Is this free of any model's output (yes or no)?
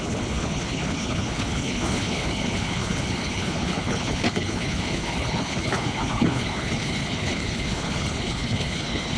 no